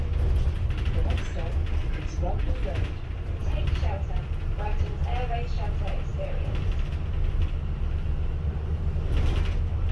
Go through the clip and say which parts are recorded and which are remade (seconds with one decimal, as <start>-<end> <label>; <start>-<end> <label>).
0.0-3.4 recorded; 3.4-4.8 remade; 4.8-9.9 recorded